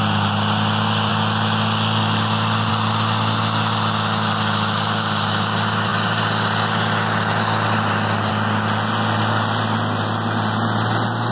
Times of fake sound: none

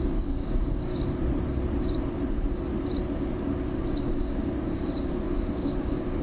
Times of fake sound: 0.0-0.9 (codec, DAC); 4.0-6.2